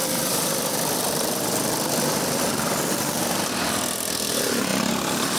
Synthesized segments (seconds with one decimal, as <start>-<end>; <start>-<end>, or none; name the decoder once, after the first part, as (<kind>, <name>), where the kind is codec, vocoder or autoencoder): 0.0-4.7 (vocoder, BigVGAN v2)